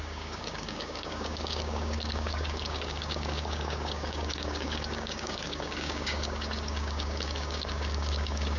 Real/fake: fake